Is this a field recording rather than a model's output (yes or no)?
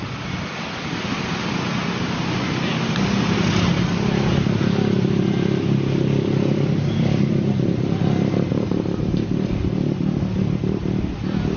yes